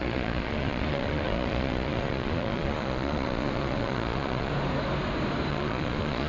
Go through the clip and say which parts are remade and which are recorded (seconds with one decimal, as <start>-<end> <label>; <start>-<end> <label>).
0.0-4.5 remade; 4.5-5.5 recorded; 5.5-6.3 remade

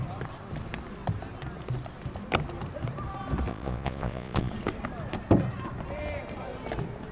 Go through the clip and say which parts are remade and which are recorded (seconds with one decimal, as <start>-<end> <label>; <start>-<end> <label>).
0.0-3.5 recorded; 3.5-4.5 remade; 4.5-7.1 recorded

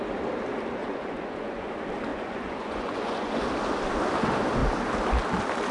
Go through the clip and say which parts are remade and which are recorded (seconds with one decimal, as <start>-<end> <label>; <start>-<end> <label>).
0.0-0.8 recorded; 0.8-1.7 remade; 1.7-2.1 recorded; 2.1-3.4 remade; 3.4-5.7 recorded